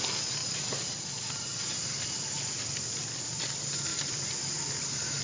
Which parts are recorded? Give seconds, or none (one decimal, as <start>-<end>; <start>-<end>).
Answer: 0.0-3.9; 4.6-5.2